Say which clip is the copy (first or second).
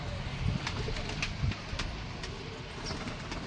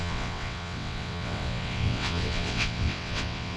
second